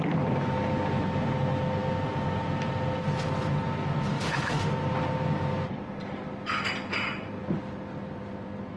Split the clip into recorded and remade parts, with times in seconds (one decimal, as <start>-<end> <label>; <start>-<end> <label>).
0.0-4.1 recorded; 4.1-4.7 remade; 4.7-8.8 recorded